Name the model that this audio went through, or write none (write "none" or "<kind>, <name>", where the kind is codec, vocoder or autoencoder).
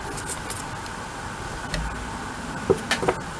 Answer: none